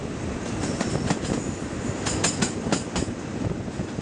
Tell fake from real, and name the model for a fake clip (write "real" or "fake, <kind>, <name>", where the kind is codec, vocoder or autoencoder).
real